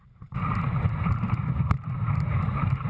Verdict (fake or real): fake